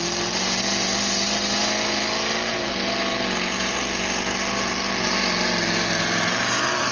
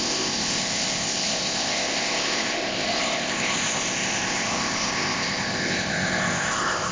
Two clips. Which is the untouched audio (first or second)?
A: first